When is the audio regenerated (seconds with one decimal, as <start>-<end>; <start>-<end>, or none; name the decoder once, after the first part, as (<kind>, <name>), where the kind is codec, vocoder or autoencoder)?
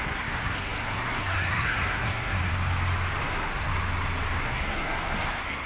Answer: 0.0-2.5 (codec, SNAC); 3.2-3.7; 4.4-5.7